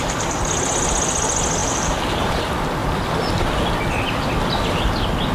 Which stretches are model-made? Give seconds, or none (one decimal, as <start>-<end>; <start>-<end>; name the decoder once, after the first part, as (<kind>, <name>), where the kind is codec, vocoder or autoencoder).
1.6-2.3 (vocoder, BigVGAN v2)